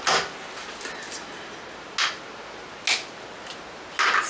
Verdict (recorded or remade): recorded